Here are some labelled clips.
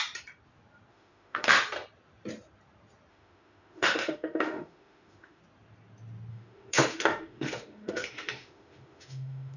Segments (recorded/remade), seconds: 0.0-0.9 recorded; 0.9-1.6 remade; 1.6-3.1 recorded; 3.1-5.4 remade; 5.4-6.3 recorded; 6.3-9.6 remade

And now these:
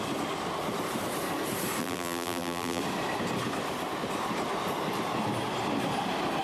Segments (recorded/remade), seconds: 0.0-1.8 recorded; 1.8-2.8 remade; 2.8-6.4 recorded

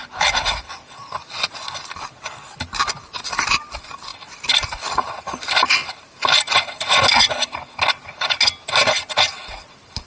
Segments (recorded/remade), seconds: 0.0-4.1 recorded; 4.1-4.8 remade; 4.8-5.8 recorded; 5.8-6.7 remade; 6.7-10.1 recorded

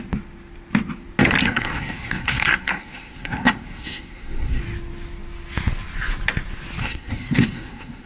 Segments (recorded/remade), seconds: 0.0-1.4 recorded; 1.4-4.6 remade; 4.6-6.8 recorded; 6.8-8.1 remade

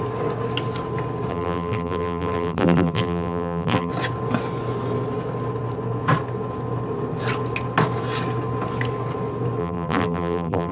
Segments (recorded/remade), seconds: 0.0-1.3 recorded; 1.3-3.9 remade; 3.9-9.6 recorded; 9.6-10.7 remade

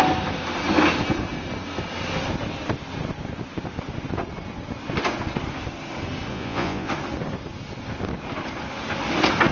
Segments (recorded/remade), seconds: 0.0-6.3 recorded; 6.3-6.9 remade; 6.9-9.5 recorded

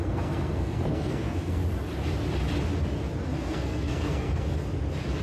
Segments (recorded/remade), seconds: 0.0-1.6 remade; 1.6-3.3 recorded; 3.3-4.6 remade; 4.6-5.2 recorded